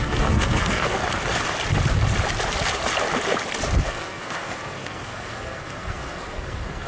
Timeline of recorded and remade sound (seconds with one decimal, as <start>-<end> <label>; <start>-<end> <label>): 0.0-1.0 remade; 1.0-3.8 recorded; 3.8-6.9 remade